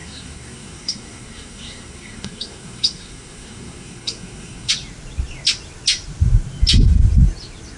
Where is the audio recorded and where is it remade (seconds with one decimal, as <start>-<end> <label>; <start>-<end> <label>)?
0.0-4.7 remade; 4.7-7.8 recorded